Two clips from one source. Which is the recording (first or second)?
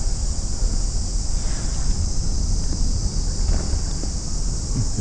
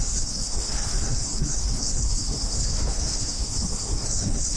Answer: first